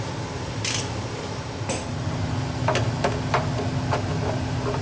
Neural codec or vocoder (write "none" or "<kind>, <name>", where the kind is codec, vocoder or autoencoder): none